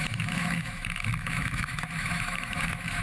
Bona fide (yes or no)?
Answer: no